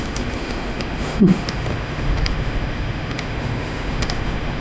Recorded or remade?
remade